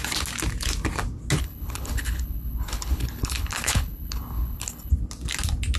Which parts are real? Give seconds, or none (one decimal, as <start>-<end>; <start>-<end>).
0.0-1.4; 4.9-5.8

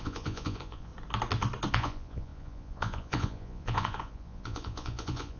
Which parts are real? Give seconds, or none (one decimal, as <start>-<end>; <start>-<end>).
0.9-1.7

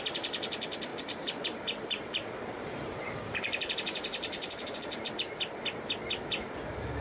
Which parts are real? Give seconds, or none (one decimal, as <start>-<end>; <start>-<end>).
0.0-0.9; 5.1-7.0

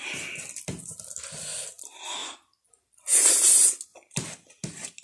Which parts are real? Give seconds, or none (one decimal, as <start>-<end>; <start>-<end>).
0.0-5.0

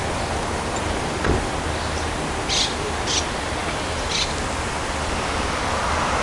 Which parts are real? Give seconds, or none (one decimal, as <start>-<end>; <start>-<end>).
0.0-6.2

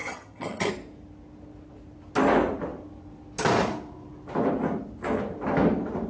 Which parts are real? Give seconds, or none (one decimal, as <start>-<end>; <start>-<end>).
0.7-6.1